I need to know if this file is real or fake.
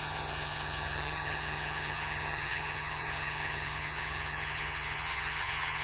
fake